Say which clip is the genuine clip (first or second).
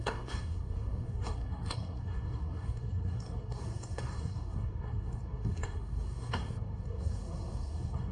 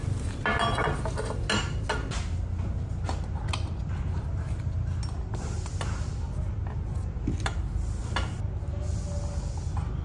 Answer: second